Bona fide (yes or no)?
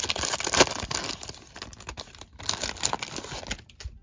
yes